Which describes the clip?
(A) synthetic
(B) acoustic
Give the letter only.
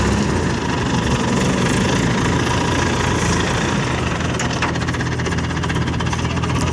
B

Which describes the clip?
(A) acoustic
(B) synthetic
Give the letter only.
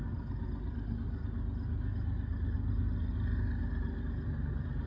A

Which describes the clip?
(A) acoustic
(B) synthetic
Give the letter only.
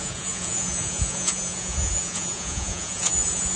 B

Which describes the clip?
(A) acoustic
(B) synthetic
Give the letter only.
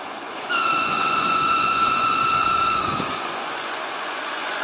B